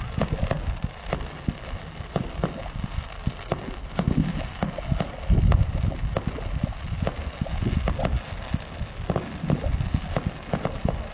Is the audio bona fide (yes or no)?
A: yes